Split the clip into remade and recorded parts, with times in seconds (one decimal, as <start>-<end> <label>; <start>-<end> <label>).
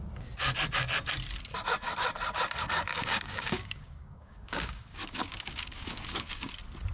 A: 0.0-2.9 recorded; 2.9-6.5 remade; 6.5-6.9 recorded